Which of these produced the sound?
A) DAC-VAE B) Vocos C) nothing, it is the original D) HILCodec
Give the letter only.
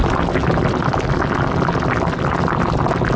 C